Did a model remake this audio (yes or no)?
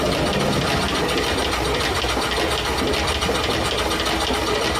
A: no